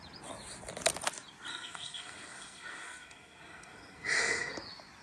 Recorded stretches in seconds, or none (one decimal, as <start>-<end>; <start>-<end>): 0.0-1.5; 4.5-5.0